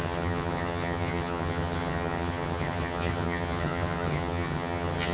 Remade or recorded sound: remade